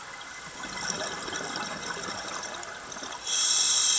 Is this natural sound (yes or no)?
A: yes